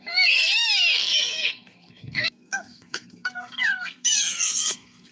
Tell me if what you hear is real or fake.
fake